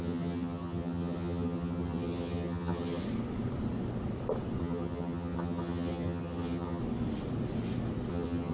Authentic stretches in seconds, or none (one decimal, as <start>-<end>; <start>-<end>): 3.0-4.6; 6.8-8.1